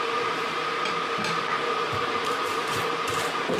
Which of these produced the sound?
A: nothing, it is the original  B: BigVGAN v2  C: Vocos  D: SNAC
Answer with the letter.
B